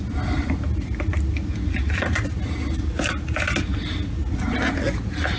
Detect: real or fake real